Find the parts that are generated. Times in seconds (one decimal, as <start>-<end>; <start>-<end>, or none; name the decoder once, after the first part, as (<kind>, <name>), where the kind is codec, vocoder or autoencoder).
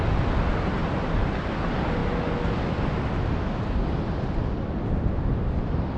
none